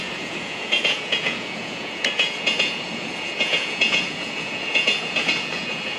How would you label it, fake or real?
fake